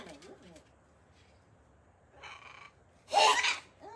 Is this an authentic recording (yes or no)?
yes